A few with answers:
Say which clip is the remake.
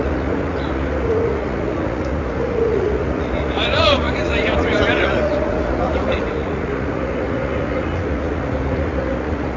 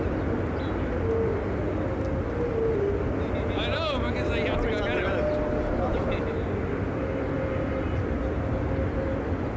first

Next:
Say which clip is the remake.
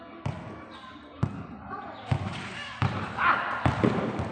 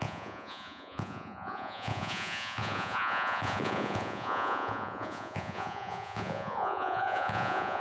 second